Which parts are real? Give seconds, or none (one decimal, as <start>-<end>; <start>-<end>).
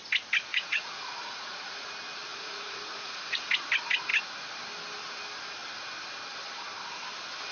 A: 0.0-0.5; 1.9-2.3; 3.5-7.5